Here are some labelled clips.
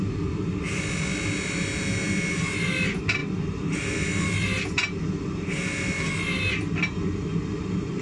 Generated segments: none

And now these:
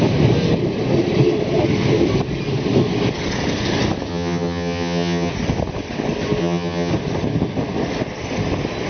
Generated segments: 4.1-5.3 (vocoder, HiFi-GAN); 6.4-6.9

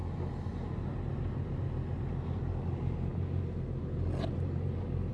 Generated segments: none